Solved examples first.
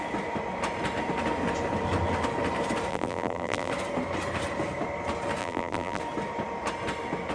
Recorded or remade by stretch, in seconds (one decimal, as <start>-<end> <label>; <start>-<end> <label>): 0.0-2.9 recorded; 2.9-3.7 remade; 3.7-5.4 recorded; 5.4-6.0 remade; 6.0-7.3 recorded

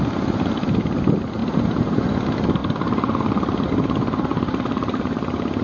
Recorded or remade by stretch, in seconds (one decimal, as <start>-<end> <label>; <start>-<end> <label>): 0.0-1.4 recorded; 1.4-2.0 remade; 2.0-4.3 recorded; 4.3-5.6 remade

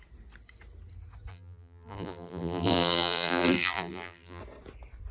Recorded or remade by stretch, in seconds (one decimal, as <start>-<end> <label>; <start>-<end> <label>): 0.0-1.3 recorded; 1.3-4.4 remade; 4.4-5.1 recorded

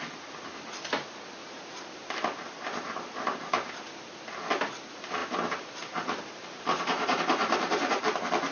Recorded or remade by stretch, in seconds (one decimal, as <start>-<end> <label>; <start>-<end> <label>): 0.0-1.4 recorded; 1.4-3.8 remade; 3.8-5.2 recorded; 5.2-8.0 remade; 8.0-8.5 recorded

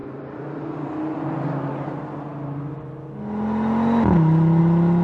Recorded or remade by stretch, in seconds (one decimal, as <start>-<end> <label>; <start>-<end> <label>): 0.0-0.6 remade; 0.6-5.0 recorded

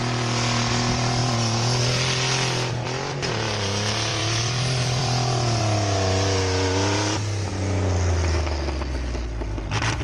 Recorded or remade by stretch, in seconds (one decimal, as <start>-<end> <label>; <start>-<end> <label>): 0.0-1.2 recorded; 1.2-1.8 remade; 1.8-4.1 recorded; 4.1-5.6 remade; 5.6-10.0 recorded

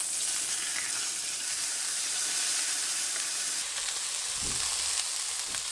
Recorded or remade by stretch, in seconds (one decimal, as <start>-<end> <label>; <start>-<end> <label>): 0.0-0.7 recorded; 0.7-4.1 remade; 4.1-5.7 recorded